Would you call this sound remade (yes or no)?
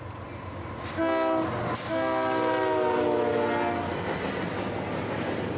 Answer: no